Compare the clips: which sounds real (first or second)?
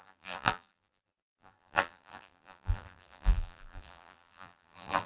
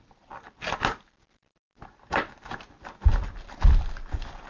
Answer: second